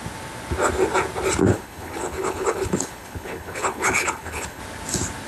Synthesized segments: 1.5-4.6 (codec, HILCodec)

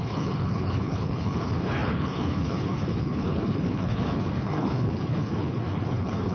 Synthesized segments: 0.0-6.3 (codec, HILCodec)

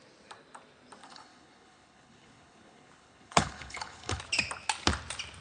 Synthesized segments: 1.0-4.2 (codec, HILCodec)

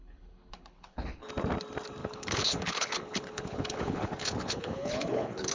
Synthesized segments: 0.0-1.3 (codec, HILCodec); 2.0-5.5

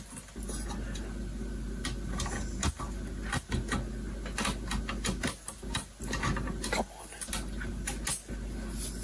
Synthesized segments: none

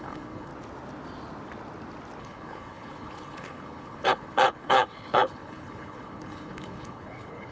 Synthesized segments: 0.0-0.5 (codec, HILCodec); 2.2-7.5

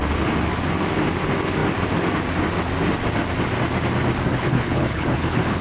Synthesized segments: 4.3-5.6 (codec, HILCodec)

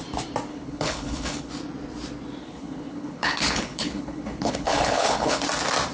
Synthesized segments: 0.5-1.5 (codec, HILCodec); 2.4-5.4